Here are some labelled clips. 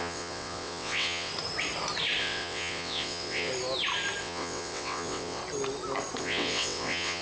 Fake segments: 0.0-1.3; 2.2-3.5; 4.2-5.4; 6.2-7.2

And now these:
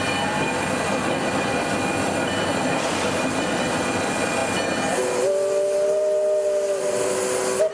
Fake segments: none

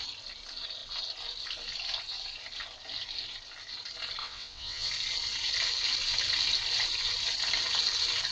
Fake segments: 4.2-4.9

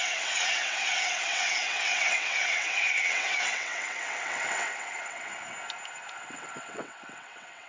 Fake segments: 0.0-5.3; 6.1-7.7

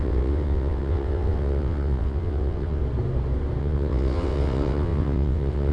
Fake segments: 0.0-2.8; 3.6-5.7

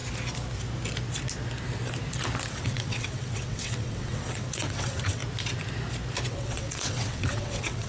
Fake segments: 2.5-5.2; 6.3-7.9

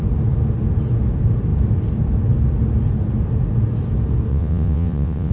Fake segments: 4.3-5.3

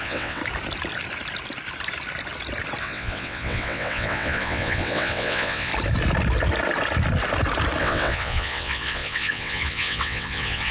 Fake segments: 0.0-0.4; 2.8-5.7; 7.8-10.7